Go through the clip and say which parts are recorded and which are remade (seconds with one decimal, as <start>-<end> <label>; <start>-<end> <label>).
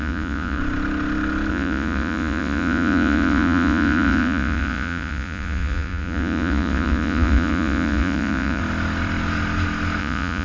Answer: 0.0-0.6 remade; 0.6-1.5 recorded; 1.5-8.6 remade; 8.6-10.0 recorded; 10.0-10.4 remade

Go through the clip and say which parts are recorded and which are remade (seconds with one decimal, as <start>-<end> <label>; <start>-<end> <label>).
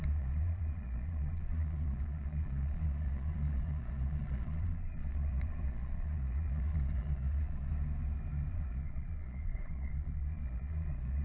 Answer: 0.0-7.7 remade; 7.7-8.5 recorded; 8.5-11.2 remade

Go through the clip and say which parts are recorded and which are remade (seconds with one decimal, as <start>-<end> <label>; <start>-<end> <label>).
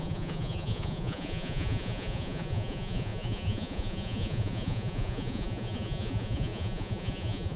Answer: 0.0-7.6 remade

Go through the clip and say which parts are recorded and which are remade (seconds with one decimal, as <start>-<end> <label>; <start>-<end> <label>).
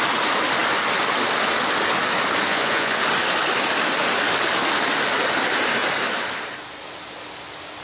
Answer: 0.0-2.5 recorded; 2.5-3.0 remade; 3.0-7.8 recorded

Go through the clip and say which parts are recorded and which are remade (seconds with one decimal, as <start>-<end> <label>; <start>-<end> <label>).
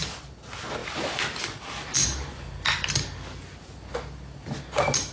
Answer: 0.0-5.1 recorded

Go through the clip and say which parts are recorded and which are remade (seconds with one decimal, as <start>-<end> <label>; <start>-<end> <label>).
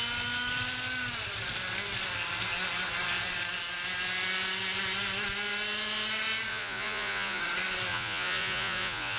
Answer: 0.0-6.5 recorded; 6.5-7.4 remade; 7.4-7.9 recorded; 7.9-9.2 remade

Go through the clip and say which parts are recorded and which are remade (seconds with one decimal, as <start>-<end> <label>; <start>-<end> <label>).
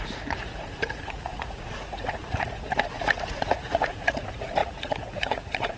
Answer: 0.0-5.8 remade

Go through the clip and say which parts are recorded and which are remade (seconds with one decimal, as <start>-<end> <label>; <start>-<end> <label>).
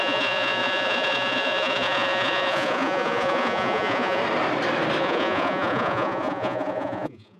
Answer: 0.0-4.2 remade; 4.2-5.0 recorded; 5.0-7.4 remade